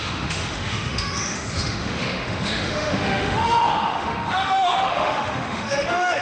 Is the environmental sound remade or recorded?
remade